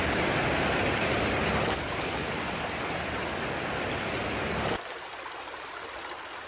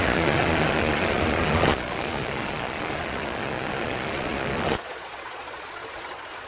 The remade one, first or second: second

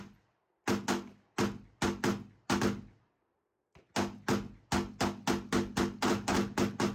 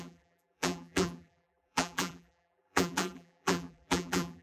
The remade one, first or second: second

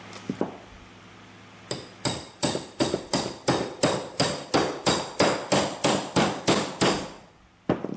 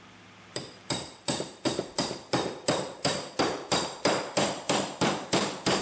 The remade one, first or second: second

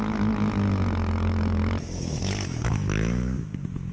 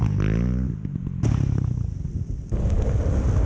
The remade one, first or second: first